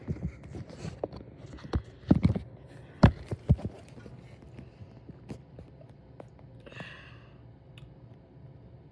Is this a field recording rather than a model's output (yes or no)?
yes